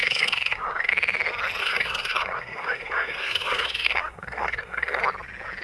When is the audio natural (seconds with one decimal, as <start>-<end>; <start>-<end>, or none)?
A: 0.9-1.6; 5.0-5.6